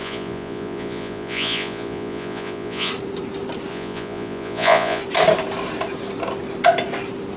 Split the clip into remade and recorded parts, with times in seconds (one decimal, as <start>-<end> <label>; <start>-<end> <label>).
0.0-2.9 remade; 2.9-3.7 recorded; 3.7-5.0 remade; 5.0-7.4 recorded

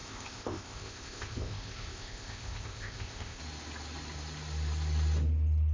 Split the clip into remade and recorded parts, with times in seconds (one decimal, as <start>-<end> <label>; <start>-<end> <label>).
0.0-3.4 remade; 3.4-5.7 recorded

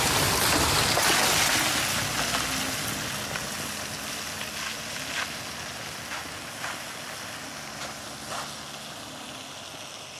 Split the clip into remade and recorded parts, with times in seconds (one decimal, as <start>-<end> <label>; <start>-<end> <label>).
0.0-10.2 recorded

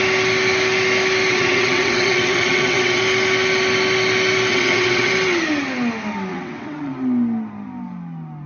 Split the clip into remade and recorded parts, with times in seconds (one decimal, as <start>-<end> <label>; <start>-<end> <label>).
0.0-1.3 recorded; 1.3-3.0 remade; 3.0-4.5 recorded; 4.5-5.1 remade; 5.1-6.3 recorded; 6.3-6.9 remade; 6.9-8.5 recorded

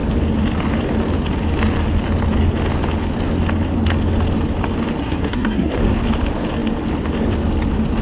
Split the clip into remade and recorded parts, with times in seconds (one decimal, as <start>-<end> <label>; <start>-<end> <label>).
0.0-5.0 recorded; 5.0-5.8 remade; 5.8-8.0 recorded

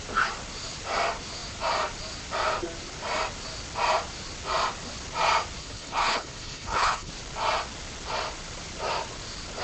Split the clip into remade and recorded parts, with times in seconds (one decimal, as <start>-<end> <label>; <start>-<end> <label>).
0.0-5.6 recorded; 5.6-7.1 remade; 7.1-9.6 recorded

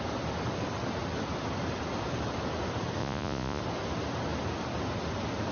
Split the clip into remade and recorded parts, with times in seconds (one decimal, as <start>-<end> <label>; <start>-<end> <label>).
0.0-3.0 recorded; 3.0-3.6 remade; 3.6-5.5 recorded

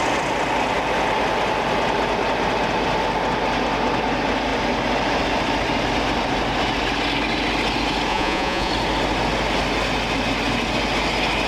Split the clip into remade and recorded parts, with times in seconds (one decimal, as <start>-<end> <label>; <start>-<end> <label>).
0.0-8.1 recorded; 8.1-8.7 remade; 8.7-11.5 recorded